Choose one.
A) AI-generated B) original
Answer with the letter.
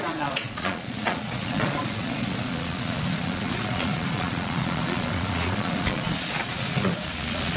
A